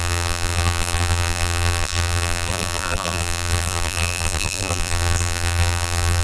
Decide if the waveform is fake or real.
fake